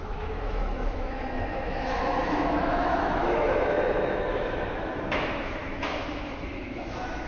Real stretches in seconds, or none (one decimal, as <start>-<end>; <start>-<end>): none